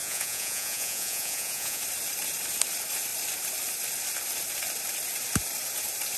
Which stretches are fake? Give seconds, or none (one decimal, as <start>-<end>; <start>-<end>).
0.0-1.8